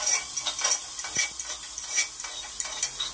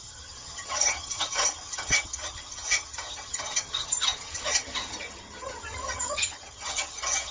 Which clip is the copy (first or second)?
second